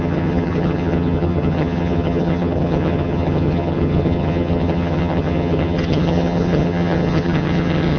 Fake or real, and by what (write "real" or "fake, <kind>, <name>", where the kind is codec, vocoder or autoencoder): fake, vocoder, HiFi-GAN